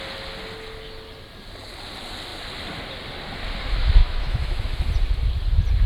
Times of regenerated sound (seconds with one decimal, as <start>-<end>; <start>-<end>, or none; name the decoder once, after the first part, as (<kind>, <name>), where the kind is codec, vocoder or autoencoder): 4.0-4.8 (autoencoder, DAC-VAE)